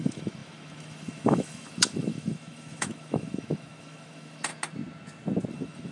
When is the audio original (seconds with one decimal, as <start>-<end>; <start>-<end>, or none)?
4.5-5.5